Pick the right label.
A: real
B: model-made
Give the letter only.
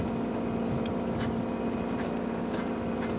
A